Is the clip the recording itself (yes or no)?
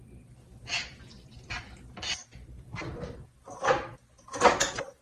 yes